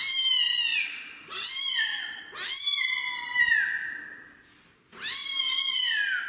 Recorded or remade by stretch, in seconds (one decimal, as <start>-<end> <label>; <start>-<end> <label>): 0.0-0.7 recorded; 0.7-2.2 remade; 2.2-5.2 recorded; 5.2-5.8 remade; 5.8-6.3 recorded